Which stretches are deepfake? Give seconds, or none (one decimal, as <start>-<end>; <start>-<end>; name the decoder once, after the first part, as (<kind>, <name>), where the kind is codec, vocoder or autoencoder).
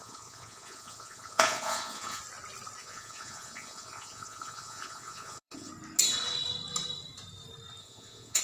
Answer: 0.0-2.2 (vocoder, Vocos); 2.8-5.7; 7.8-8.4